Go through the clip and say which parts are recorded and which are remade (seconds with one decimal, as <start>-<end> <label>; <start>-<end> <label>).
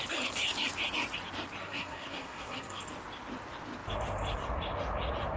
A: 0.0-1.6 recorded; 1.6-2.8 remade; 2.8-5.4 recorded